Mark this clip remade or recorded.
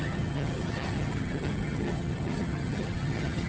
remade